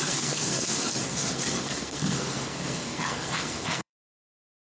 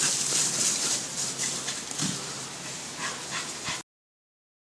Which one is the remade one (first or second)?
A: first